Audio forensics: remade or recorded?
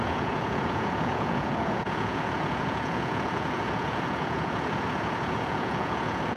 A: remade